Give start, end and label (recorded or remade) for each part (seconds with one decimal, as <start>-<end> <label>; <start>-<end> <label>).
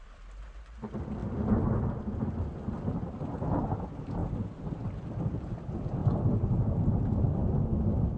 0.0-1.2 remade; 1.2-2.0 recorded; 2.0-4.2 remade; 4.2-5.3 recorded; 5.3-7.4 remade; 7.4-8.2 recorded